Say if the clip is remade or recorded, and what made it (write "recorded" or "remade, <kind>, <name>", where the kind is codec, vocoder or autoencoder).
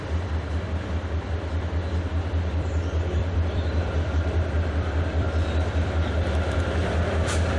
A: remade, vocoder, BigVGAN v2